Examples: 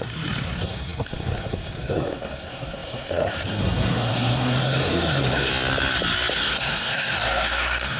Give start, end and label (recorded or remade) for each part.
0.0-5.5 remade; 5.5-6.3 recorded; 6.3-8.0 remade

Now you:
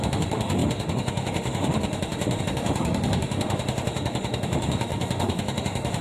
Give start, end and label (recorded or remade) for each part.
0.0-6.0 remade